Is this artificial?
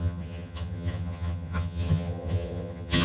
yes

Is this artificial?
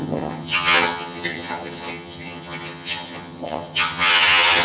yes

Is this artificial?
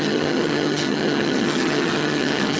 yes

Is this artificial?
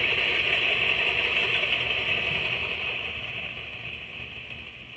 no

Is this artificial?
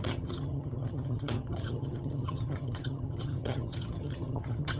yes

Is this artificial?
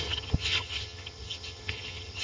yes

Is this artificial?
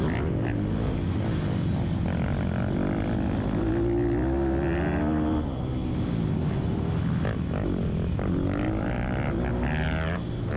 no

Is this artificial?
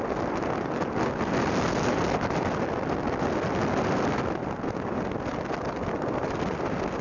no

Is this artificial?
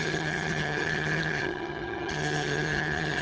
yes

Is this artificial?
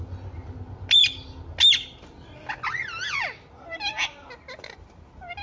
no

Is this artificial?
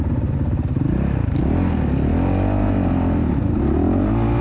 no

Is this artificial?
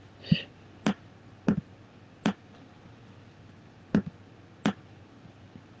no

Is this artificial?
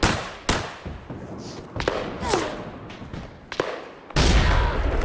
no